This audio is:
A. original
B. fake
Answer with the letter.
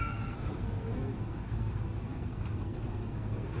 B